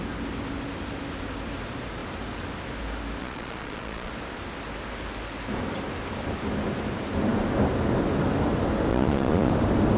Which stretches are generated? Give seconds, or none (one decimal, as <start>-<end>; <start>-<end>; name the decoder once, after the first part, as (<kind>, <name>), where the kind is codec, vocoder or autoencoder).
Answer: 3.2-4.1 (vocoder, Vocos); 8.9-9.5